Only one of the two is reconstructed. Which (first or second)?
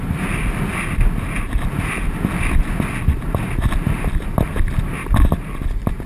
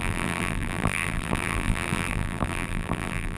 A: second